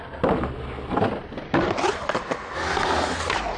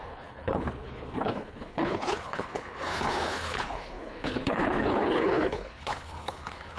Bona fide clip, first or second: first